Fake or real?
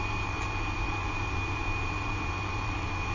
fake